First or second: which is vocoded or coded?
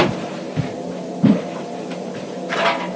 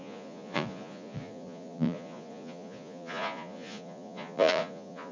second